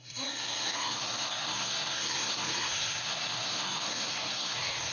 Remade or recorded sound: remade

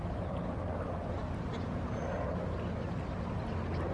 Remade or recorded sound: recorded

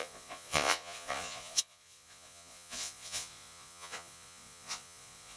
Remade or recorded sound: remade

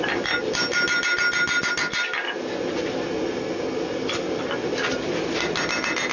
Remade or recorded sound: recorded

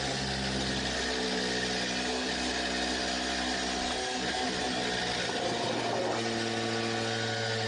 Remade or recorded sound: recorded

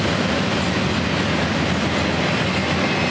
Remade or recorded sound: recorded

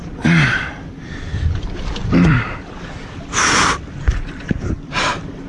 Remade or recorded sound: remade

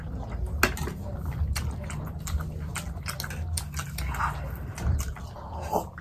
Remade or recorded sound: recorded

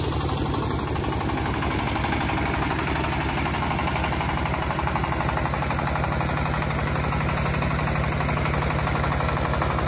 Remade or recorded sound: recorded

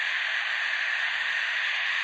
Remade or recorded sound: remade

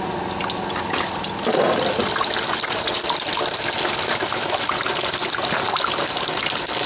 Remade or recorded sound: recorded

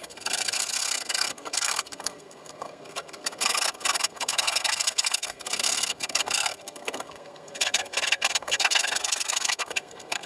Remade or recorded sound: remade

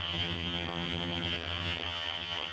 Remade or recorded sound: remade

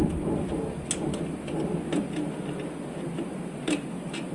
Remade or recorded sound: recorded